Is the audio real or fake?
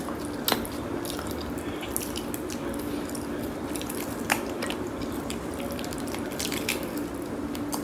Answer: real